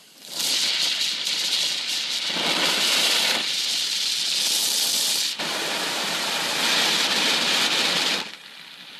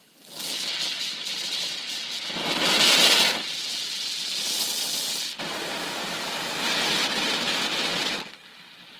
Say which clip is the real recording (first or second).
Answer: second